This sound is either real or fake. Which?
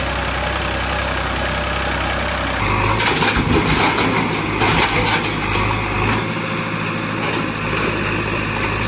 real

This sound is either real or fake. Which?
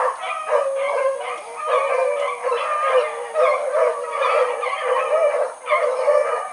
real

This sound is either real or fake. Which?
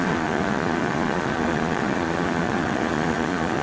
fake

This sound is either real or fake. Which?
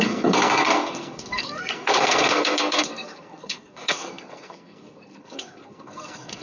fake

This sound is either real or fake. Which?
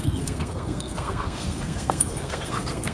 fake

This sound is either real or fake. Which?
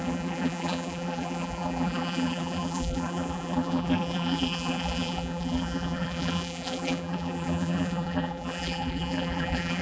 fake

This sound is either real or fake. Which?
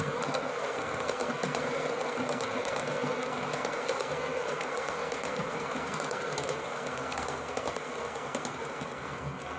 fake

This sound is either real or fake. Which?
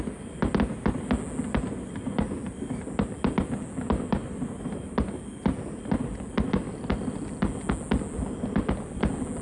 real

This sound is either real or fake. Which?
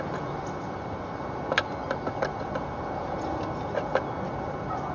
real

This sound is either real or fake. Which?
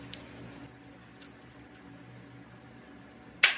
real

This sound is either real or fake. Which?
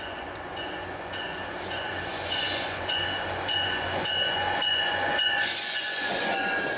fake